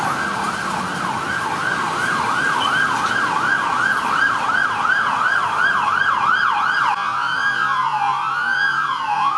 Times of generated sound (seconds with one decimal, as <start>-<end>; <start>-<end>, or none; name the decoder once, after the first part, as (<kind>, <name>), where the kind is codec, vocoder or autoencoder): none